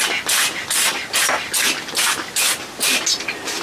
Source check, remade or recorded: recorded